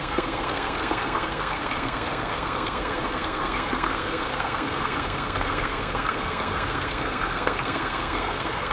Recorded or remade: remade